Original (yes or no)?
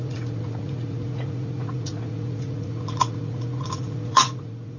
no